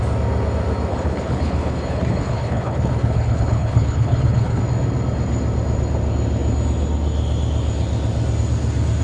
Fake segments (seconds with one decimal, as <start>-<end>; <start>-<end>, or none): 0.9-4.6